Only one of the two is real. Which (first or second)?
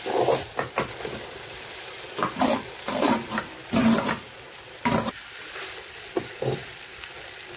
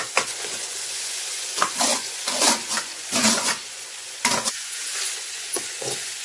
first